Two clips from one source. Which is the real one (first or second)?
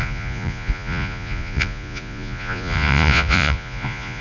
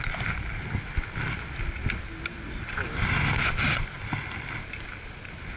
second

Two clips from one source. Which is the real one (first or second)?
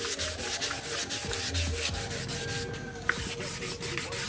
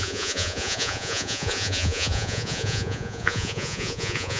first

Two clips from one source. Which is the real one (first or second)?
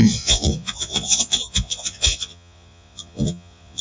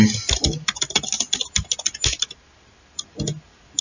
second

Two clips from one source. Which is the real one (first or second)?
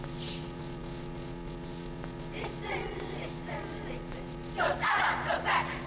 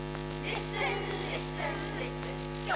second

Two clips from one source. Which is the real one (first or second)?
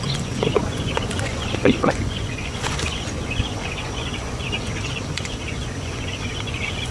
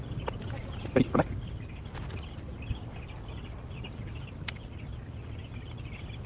second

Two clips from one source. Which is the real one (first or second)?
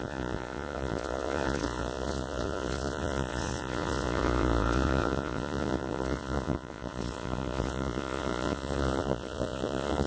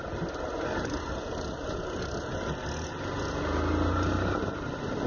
second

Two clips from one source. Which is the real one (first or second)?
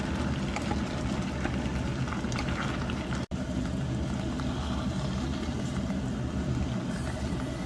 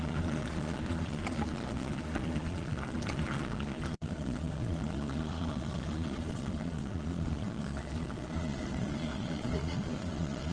first